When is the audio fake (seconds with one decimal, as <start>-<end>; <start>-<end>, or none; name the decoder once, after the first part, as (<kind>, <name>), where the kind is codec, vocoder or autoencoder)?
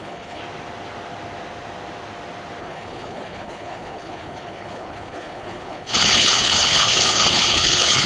0.0-0.4 (codec, HILCodec); 2.6-8.1